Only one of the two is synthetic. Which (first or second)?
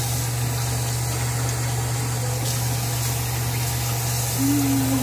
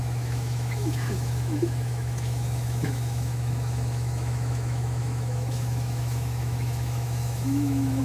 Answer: second